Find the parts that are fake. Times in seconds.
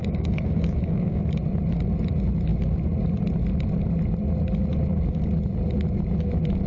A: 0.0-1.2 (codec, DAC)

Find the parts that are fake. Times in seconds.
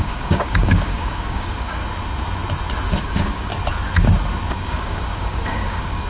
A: 0.0-1.8 (codec, DAC); 3.0-3.5; 4.5-6.1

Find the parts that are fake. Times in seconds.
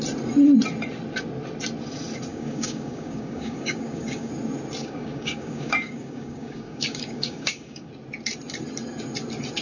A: 2.3-4.3 (codec, DAC); 4.8-7.9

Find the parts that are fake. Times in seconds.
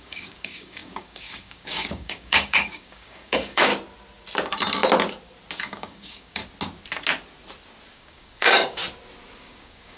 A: 0.0-3.7 (codec, DAC); 5.6-6.4; 7.9-8.8; 9.4-10.0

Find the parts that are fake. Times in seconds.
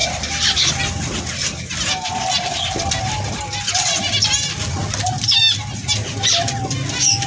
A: none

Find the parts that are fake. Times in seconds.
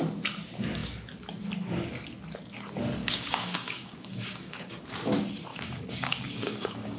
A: 3.0-4.7 (codec, DAC); 5.5-7.0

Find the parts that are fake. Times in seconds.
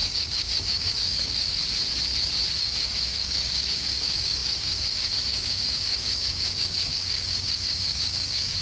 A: 0.0-1.6 (codec, DAC); 2.6-8.6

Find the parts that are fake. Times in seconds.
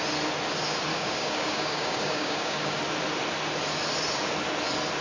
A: 0.9-2.8 (codec, DAC)